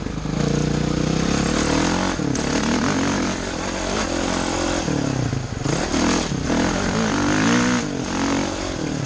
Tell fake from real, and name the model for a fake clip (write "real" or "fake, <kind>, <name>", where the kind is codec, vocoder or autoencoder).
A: real